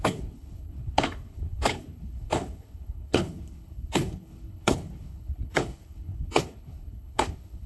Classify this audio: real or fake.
fake